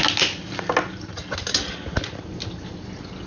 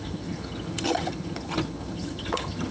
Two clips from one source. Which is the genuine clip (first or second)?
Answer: first